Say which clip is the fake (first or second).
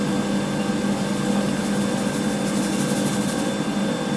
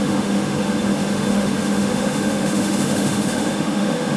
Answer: second